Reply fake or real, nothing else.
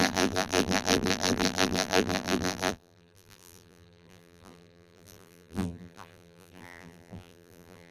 fake